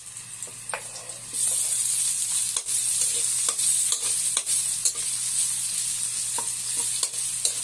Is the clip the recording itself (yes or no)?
yes